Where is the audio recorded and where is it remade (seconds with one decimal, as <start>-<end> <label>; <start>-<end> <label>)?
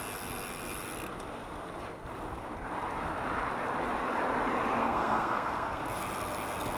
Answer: 0.0-4.8 recorded; 4.8-5.8 remade; 5.8-6.8 recorded